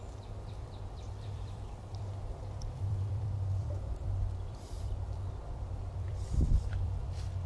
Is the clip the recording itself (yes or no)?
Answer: no